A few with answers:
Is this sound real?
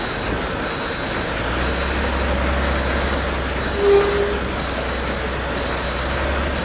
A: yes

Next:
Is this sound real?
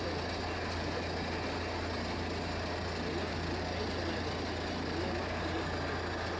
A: yes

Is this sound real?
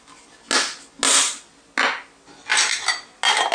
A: yes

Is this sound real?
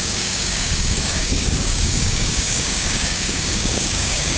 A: no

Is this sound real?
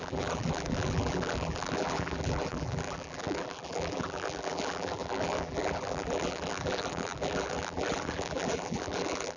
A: no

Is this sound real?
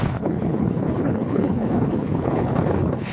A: no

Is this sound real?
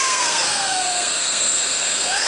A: no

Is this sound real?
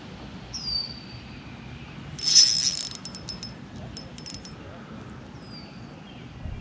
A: yes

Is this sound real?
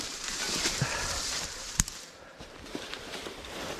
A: no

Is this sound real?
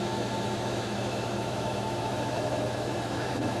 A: no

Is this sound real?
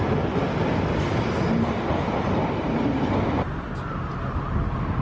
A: yes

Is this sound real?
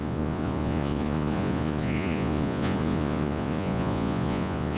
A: no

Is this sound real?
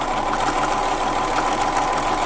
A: yes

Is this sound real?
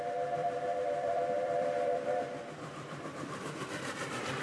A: no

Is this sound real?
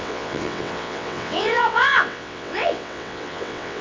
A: no